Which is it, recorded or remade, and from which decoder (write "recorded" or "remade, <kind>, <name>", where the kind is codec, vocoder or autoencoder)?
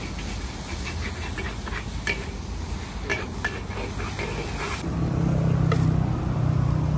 recorded